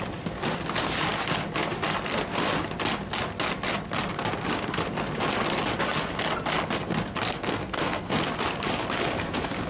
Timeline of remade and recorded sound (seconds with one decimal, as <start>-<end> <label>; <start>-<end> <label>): 0.0-7.5 recorded; 7.5-8.2 remade; 8.2-9.7 recorded